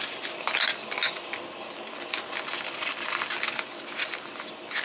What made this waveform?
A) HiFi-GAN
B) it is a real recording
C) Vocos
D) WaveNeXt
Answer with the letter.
B